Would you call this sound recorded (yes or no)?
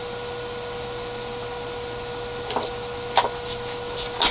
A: yes